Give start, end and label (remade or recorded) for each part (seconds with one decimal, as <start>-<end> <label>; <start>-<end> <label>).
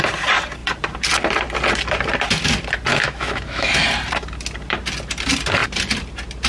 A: 0.0-2.9 recorded; 2.9-3.7 remade; 3.7-6.5 recorded